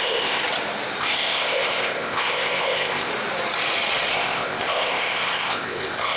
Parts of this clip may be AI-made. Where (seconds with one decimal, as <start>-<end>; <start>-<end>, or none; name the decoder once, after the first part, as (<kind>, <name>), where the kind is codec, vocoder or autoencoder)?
0.0-0.4 (codec, ZipCodec); 1.0-3.1; 4.1-6.2